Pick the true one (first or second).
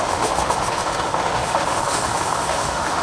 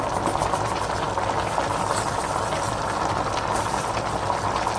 second